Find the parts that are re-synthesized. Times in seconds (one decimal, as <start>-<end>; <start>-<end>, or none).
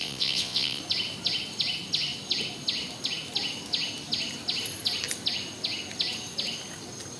0.0-0.8